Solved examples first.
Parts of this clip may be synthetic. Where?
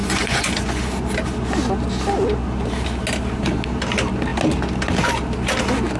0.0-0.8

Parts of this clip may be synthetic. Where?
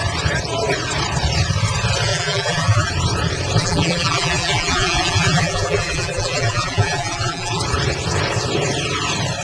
2.1-2.9; 3.6-7.6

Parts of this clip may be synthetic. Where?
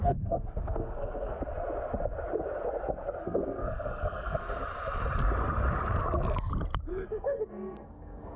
0.0-1.4; 3.2-4.6; 6.9-8.4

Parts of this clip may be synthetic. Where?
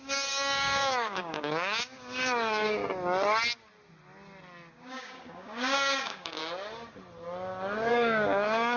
0.0-2.8; 4.7-6.4; 7.9-8.8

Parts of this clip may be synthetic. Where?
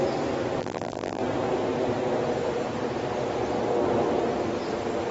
0.6-1.2